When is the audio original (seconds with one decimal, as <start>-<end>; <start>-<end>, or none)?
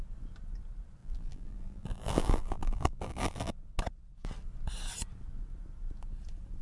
0.0-1.0; 3.5-6.6